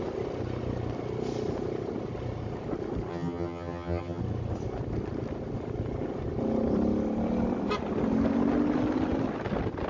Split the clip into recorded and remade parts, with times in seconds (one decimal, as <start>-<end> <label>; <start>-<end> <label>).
0.0-3.1 recorded; 3.1-4.2 remade; 4.2-9.9 recorded